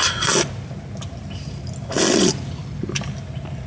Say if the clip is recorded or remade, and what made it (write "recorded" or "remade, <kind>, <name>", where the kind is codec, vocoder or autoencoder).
recorded